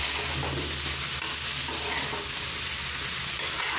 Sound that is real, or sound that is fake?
real